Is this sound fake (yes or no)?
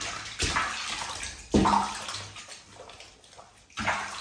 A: no